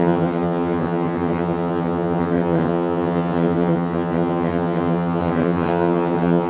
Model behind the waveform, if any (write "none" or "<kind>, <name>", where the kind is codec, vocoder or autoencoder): vocoder, HiFi-GAN